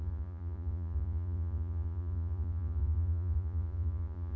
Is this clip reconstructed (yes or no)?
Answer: yes